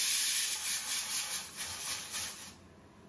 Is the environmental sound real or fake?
real